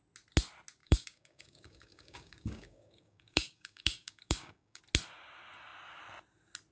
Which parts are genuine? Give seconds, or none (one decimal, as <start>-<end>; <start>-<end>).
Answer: 0.0-0.8; 4.8-6.7